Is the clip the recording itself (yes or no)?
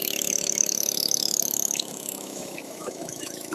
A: no